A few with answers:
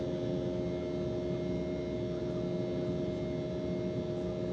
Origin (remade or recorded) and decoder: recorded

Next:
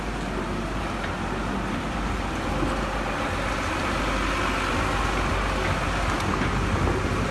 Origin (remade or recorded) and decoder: recorded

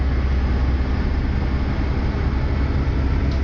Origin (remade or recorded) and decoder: recorded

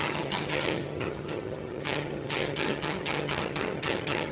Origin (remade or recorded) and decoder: remade, vocoder, HiFi-GAN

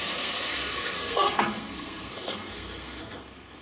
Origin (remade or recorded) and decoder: remade, codec, SNAC